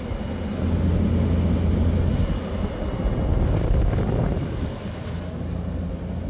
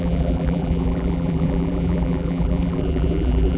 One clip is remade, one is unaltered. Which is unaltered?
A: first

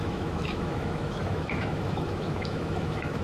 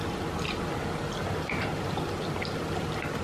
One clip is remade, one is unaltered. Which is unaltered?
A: second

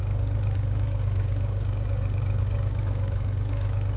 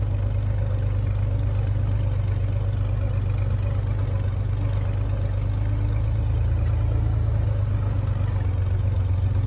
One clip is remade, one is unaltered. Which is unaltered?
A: second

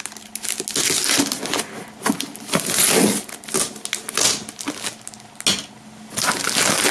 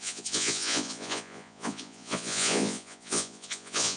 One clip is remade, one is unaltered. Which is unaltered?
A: first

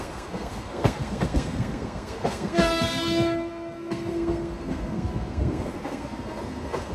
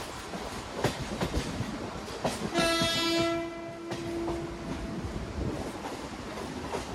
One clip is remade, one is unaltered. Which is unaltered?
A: second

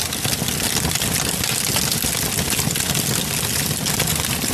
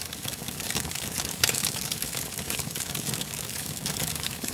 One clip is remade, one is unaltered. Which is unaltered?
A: first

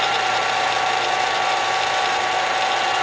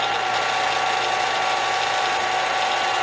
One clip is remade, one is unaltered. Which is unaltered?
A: second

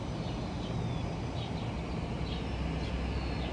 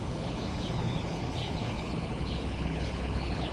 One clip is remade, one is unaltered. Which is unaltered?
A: first